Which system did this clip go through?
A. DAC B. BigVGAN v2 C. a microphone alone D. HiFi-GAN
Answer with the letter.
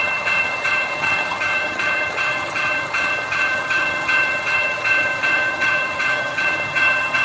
D